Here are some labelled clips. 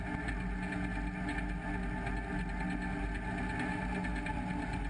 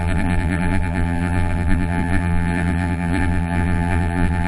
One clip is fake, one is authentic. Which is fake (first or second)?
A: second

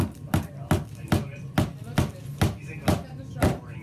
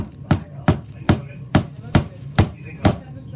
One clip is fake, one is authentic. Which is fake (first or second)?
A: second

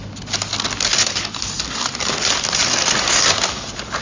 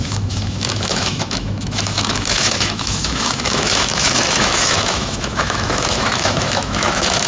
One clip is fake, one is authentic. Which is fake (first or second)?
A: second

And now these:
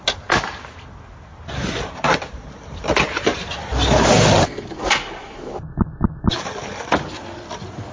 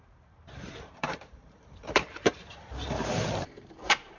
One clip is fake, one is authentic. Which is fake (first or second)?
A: second